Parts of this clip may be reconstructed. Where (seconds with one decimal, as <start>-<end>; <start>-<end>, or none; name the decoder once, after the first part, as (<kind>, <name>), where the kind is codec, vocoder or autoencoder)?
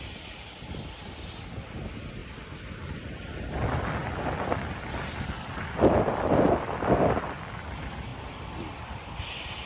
none